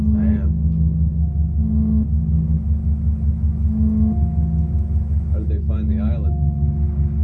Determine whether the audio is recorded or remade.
recorded